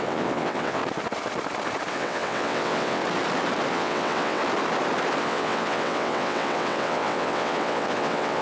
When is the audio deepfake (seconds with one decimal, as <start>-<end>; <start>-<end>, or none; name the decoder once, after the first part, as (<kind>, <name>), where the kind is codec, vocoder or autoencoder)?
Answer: 0.0-0.8 (vocoder, WaveNeXt); 1.9-3.0; 3.7-4.4; 5.2-8.4